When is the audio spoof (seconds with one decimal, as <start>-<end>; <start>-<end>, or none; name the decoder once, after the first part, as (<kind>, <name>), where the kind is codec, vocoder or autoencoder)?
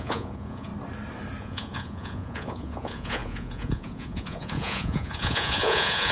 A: 0.0-0.7 (vocoder, Vocos); 1.4-6.1